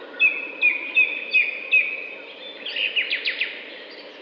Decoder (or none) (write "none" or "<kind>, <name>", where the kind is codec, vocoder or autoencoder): none